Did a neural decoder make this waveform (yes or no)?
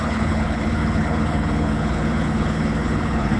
yes